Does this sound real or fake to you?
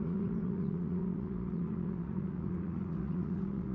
fake